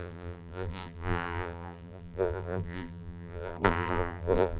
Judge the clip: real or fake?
fake